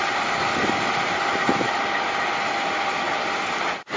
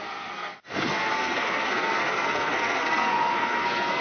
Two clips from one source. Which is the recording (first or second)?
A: first